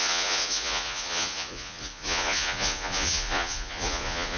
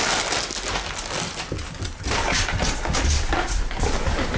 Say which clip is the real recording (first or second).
second